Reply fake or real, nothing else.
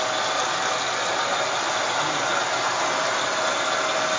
real